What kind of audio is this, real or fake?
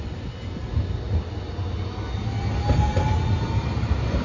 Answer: real